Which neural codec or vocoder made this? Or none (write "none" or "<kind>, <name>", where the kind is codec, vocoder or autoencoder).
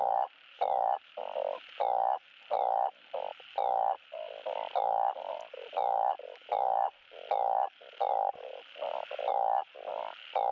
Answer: none